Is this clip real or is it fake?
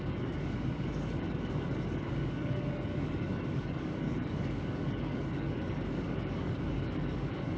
fake